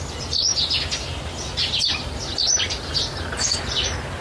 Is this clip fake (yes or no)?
no